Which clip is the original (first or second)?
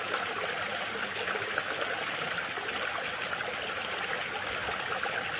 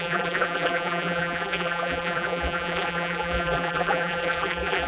first